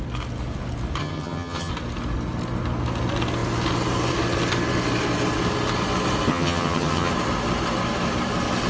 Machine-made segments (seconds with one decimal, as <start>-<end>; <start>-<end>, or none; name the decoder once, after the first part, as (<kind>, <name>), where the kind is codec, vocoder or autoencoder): 1.0-1.7 (vocoder, HiFi-GAN); 6.3-7.1